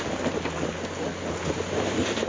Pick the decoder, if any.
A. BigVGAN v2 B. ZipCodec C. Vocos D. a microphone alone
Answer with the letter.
D